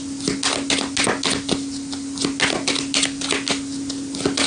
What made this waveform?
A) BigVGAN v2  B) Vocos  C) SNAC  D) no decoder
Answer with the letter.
D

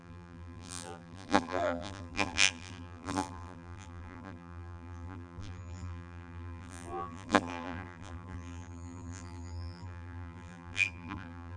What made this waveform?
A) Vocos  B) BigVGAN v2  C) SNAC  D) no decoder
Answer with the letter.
B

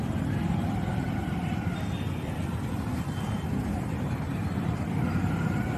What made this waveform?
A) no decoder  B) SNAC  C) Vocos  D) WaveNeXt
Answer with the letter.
A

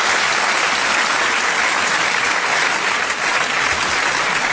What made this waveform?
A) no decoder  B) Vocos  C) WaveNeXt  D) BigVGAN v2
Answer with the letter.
A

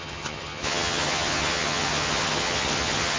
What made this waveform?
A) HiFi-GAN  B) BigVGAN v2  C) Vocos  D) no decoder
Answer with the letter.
A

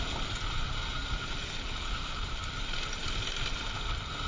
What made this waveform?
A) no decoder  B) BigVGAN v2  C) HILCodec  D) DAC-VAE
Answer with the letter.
A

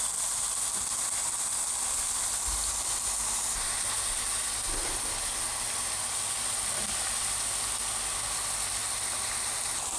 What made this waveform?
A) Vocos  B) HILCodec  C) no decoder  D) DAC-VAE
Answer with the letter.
C